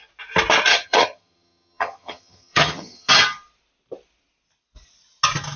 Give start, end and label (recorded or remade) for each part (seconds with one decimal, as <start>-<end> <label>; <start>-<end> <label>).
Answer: 0.0-0.7 recorded; 0.7-3.1 remade; 3.1-5.6 recorded